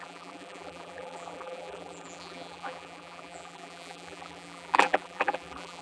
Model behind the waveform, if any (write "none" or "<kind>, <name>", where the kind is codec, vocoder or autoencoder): vocoder, BigVGAN v2